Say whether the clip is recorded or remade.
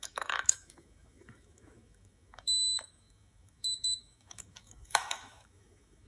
remade